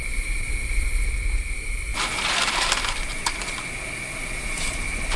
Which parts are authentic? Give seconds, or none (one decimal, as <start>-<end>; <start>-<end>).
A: 0.0-5.2